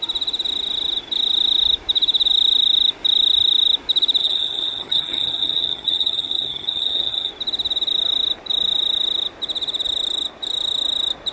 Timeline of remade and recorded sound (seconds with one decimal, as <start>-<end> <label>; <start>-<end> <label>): 0.0-4.2 recorded; 4.2-7.3 remade; 7.3-11.3 recorded